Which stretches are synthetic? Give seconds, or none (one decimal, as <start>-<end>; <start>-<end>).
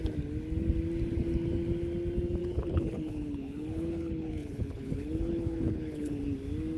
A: 2.4-6.2